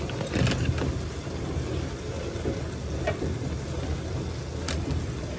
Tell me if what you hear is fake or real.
real